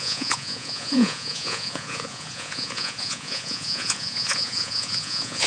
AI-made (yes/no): yes